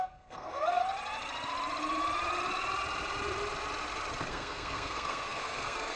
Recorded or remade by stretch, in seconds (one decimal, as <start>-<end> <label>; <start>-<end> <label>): 0.0-0.8 remade; 0.8-4.3 recorded; 4.3-6.0 remade